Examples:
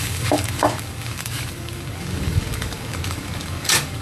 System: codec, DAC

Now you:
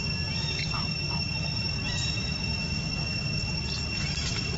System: none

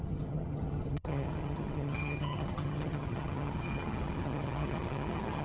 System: vocoder, HiFi-GAN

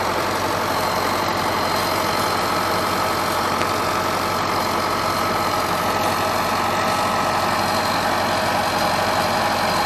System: none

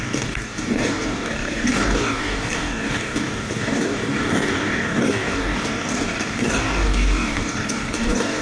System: codec, DAC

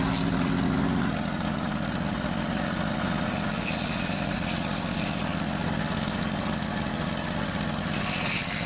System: none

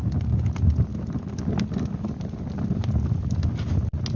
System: none